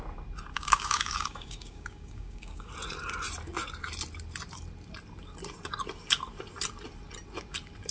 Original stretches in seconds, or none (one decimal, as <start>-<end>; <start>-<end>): 0.0-0.5; 2.7-7.9